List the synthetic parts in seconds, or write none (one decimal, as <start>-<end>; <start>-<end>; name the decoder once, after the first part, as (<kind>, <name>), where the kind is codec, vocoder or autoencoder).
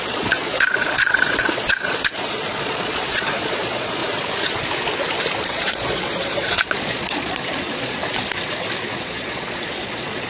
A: 0.0-4.0 (vocoder, Vocos); 5.5-8.0; 9.0-10.3